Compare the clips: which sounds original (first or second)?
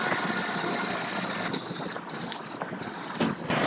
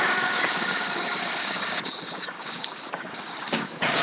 first